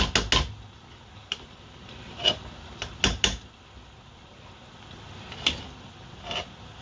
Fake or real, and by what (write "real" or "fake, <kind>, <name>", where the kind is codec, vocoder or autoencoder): real